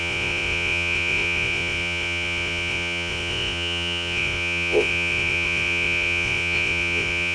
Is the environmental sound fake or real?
fake